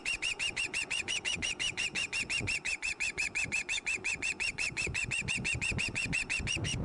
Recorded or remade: remade